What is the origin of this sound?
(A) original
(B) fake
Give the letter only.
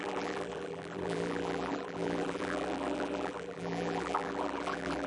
B